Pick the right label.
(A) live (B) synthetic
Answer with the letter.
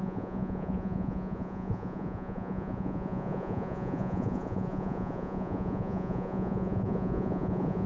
B